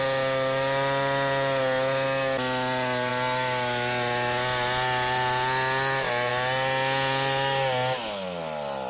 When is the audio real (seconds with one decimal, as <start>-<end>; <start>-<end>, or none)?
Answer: 0.0-8.9